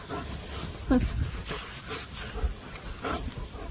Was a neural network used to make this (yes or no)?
no